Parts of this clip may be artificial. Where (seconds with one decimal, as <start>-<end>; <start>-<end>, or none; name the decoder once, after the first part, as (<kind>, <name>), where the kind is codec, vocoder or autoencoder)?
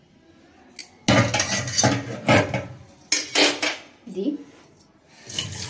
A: none